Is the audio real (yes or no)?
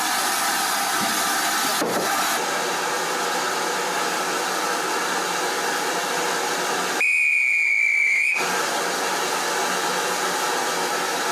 yes